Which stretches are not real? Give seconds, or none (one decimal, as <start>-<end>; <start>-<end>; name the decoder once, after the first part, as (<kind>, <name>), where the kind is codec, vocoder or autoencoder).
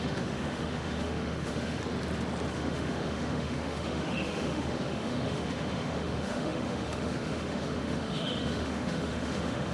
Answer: 0.0-1.8 (autoencoder, DAC-VAE); 2.5-9.7